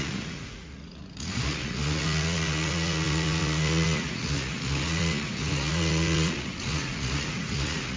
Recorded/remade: remade